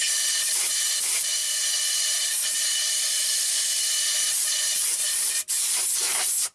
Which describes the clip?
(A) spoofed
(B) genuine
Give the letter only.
B